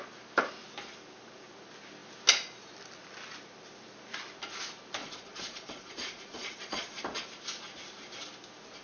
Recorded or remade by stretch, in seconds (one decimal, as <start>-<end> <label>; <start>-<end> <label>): 0.0-5.0 recorded; 5.0-7.0 remade; 7.0-8.8 recorded